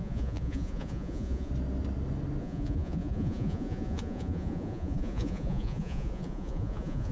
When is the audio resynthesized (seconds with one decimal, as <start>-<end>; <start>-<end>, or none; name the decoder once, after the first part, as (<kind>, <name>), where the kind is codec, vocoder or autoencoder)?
0.0-1.5 (vocoder, Vocos); 2.4-7.1